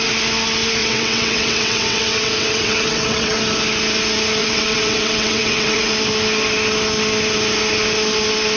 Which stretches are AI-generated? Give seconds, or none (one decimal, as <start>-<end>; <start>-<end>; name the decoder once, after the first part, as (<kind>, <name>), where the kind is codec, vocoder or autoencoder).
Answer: 0.8-3.4 (vocoder, WaveNeXt); 4.4-5.9